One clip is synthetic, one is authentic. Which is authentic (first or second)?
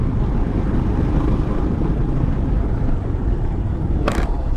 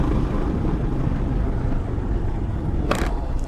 second